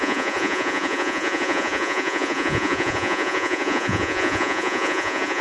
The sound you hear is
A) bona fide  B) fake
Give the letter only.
B